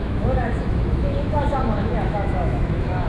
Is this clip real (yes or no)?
no